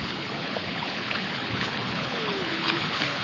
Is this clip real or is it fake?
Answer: fake